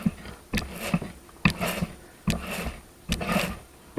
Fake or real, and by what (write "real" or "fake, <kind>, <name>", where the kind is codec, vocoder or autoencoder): real